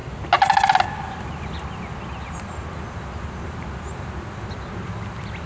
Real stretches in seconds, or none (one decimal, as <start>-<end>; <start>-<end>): 0.0-5.5